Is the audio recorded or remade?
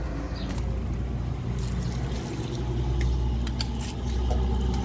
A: recorded